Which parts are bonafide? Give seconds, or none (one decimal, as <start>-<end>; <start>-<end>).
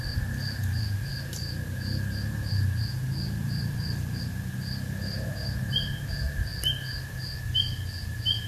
0.0-8.5